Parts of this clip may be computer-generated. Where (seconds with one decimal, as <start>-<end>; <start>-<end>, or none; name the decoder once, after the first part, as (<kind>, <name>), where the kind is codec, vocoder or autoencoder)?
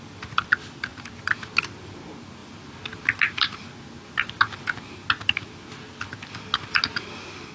none